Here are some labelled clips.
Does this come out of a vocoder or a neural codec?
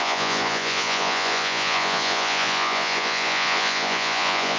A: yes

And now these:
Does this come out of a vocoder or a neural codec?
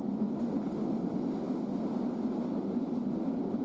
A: no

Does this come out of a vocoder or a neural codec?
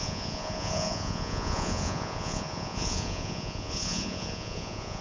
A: yes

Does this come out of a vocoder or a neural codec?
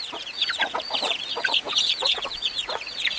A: yes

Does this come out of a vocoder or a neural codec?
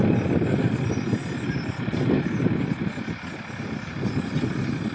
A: no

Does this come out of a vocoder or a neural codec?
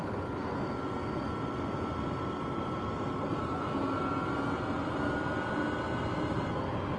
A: no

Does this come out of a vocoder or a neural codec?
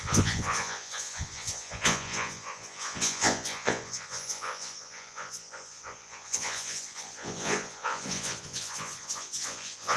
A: yes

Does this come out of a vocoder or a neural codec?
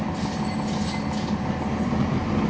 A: no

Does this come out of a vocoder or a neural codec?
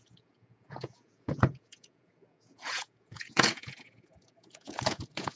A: yes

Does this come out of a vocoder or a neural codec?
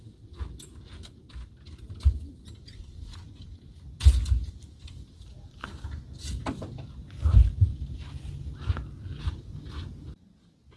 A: no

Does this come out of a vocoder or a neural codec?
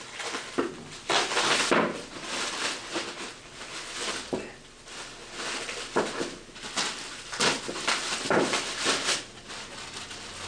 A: no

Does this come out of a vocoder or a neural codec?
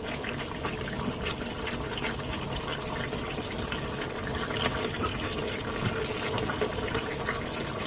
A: no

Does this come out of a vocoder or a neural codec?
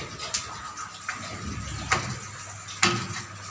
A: no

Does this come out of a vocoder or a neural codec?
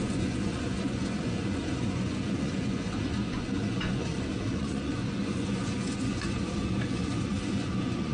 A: yes